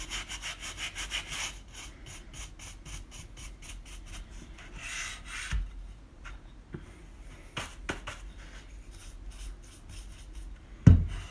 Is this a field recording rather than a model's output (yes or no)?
yes